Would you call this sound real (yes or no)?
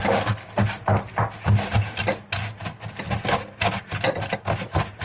yes